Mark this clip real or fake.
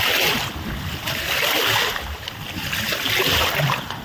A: real